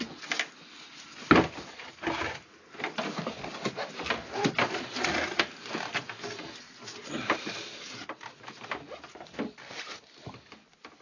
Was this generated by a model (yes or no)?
no